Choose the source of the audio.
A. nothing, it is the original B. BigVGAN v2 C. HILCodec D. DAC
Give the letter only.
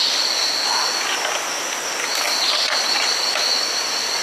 A